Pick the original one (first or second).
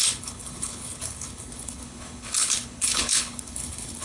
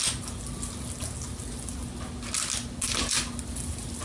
second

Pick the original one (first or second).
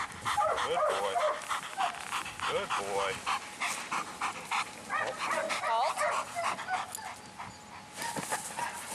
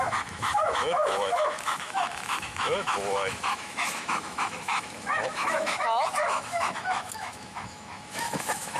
first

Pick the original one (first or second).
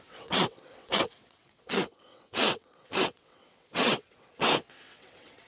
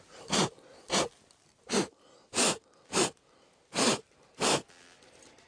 second